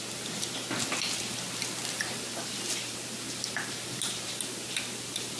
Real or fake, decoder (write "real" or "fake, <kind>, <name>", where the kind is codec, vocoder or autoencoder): real